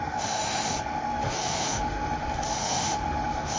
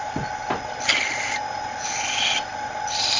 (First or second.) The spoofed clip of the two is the first